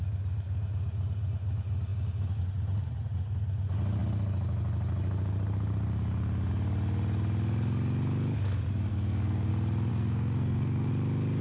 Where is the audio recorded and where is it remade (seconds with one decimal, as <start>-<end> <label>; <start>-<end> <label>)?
0.0-8.9 recorded; 8.9-9.5 remade; 9.5-9.9 recorded; 9.9-10.9 remade; 10.9-11.4 recorded